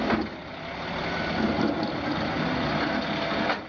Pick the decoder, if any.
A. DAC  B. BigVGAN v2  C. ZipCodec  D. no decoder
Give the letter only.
D